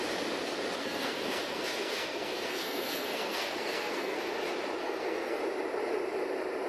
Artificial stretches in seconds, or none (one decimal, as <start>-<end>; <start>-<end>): 0.8-4.2; 4.8-5.4